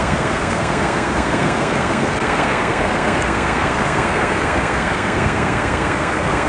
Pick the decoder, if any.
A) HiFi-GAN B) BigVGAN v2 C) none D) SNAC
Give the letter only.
D